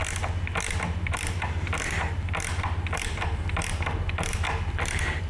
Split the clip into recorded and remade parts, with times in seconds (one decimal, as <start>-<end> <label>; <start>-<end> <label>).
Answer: 0.0-5.3 recorded